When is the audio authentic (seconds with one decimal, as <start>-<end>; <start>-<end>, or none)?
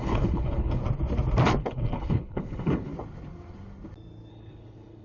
0.8-1.6; 2.9-4.3